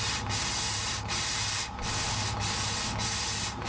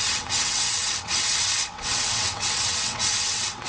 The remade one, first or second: second